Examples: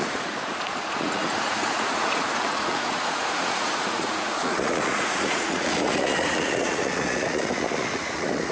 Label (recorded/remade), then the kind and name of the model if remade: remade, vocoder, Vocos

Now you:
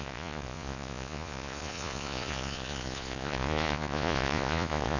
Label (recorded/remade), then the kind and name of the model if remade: remade, vocoder, Vocos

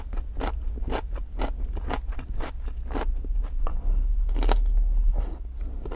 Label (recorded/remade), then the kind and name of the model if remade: recorded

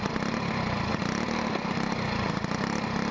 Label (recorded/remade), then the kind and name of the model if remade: recorded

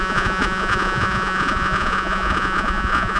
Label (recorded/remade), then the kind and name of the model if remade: remade, vocoder, Vocos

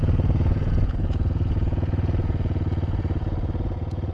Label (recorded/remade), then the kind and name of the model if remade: remade, vocoder, Vocos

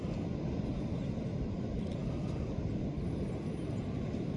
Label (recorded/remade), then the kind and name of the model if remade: recorded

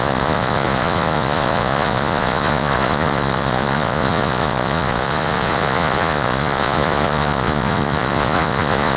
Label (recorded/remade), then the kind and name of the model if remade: remade, vocoder, Vocos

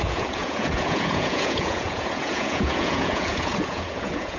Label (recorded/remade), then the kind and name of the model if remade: remade, vocoder, Vocos